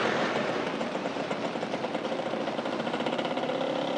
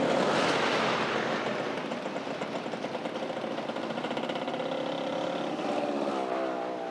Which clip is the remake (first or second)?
first